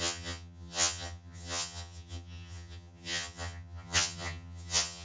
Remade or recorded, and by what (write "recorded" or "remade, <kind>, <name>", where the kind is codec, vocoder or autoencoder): remade, vocoder, HiFi-GAN